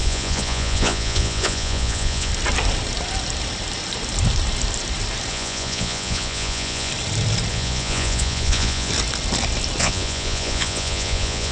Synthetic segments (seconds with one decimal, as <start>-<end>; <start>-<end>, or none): 0.0-2.3; 5.3-6.9; 7.5-8.9; 9.8-11.5